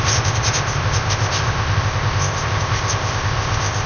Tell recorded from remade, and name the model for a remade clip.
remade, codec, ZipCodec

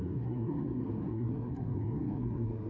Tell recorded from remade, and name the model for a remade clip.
remade, codec, SNAC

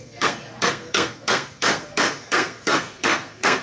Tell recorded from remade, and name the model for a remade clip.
remade, codec, SNAC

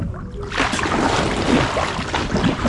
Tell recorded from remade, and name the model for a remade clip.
recorded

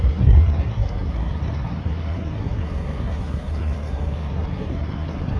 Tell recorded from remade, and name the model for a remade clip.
remade, codec, SNAC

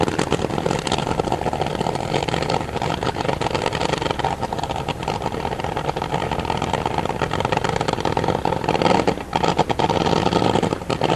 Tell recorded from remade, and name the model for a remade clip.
remade, vocoder, BigVGAN v2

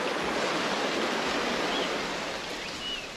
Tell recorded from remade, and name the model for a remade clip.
recorded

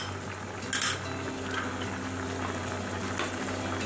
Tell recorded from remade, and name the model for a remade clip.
recorded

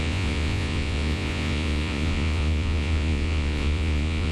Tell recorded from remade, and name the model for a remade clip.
remade, vocoder, Vocos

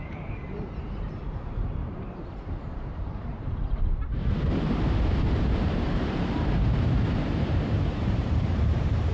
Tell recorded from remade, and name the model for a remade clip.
remade, vocoder, BigVGAN v2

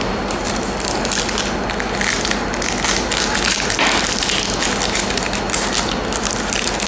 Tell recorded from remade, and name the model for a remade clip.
recorded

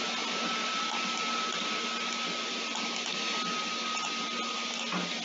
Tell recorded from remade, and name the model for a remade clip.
recorded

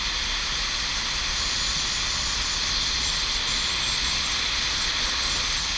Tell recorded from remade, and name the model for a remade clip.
recorded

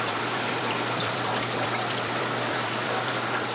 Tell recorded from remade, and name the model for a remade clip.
remade, vocoder, BigVGAN v2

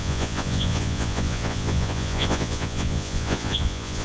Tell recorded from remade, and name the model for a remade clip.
remade, vocoder, Vocos